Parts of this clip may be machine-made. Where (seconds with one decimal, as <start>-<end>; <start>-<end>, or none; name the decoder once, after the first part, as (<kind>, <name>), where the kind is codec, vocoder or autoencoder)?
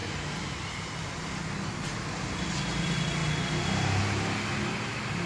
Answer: none